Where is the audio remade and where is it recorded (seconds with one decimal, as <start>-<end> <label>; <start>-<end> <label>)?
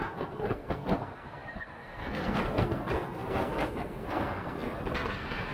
0.0-5.5 remade